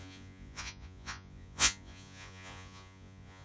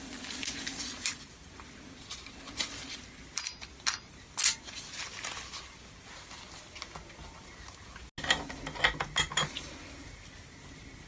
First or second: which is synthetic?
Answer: first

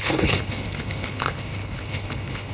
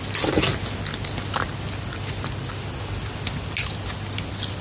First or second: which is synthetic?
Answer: first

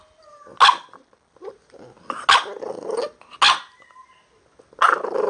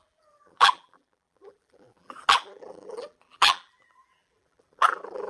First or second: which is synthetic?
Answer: second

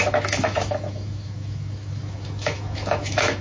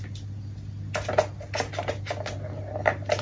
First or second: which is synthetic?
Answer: first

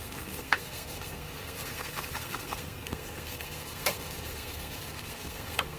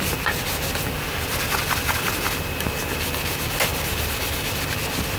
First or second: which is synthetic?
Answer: first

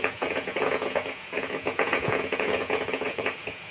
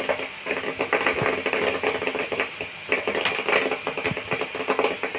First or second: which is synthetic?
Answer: first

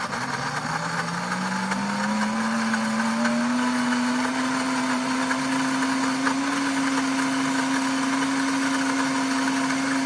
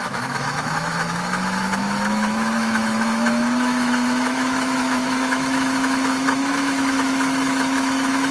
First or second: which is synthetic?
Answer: second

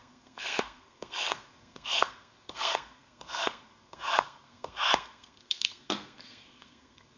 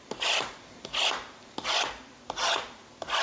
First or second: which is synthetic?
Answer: first